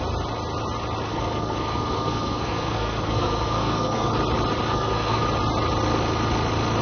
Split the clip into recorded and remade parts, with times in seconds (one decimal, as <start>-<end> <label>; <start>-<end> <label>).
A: 0.0-1.1 recorded; 1.1-4.1 remade; 4.1-4.7 recorded; 4.7-5.2 remade; 5.2-6.8 recorded